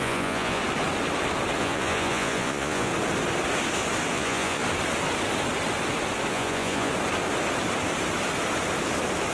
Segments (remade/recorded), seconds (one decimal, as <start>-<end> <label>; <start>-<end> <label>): 0.0-0.6 remade; 0.6-1.6 recorded; 1.6-2.9 remade; 2.9-4.1 recorded; 4.1-4.6 remade; 4.6-6.3 recorded; 6.3-6.9 remade; 6.9-9.3 recorded